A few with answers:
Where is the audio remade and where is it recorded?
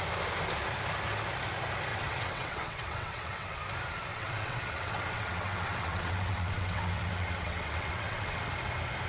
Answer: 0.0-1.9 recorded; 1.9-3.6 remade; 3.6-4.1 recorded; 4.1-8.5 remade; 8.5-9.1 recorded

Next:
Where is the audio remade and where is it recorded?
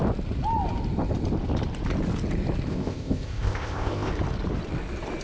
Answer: 0.0-2.7 recorded; 2.7-4.1 remade; 4.1-5.2 recorded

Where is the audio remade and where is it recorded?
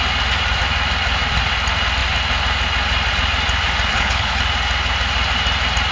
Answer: 0.0-3.9 recorded; 3.9-4.4 remade; 4.4-5.9 recorded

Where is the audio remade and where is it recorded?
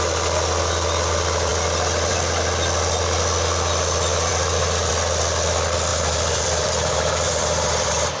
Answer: 0.0-5.9 recorded; 5.9-8.2 remade